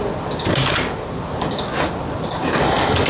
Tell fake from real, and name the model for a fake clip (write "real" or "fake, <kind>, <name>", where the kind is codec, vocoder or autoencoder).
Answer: real